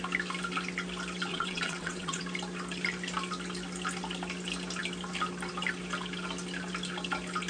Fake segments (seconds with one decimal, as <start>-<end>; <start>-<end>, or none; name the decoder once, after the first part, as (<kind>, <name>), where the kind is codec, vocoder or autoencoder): 1.3-2.2 (vocoder, WaveNeXt)